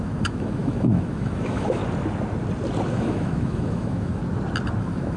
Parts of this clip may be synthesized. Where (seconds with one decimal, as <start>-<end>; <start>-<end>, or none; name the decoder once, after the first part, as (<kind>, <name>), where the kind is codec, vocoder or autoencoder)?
0.0-1.8 (autoencoder, DAC-VAE); 2.9-4.2; 4.8-5.2